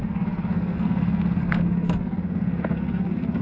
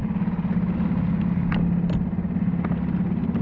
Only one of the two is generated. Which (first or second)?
first